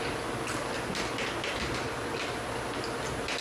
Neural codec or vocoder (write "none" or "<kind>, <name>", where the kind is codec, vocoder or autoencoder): none